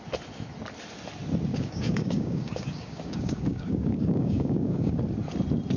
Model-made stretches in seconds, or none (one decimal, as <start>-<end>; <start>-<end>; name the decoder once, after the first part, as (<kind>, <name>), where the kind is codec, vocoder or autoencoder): 1.5-5.0 (codec, DAC)